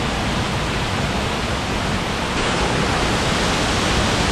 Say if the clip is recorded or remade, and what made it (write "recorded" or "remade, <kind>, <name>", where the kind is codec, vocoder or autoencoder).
recorded